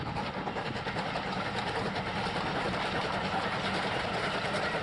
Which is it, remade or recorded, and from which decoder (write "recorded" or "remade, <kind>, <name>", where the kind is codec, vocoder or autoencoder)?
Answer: recorded